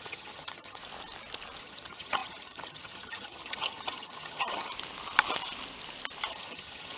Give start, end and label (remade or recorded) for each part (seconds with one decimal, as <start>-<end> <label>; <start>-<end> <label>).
0.0-0.8 remade; 0.8-1.6 recorded; 1.6-4.7 remade; 4.7-6.3 recorded; 6.3-7.0 remade